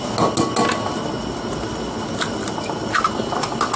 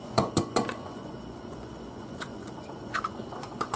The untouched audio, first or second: first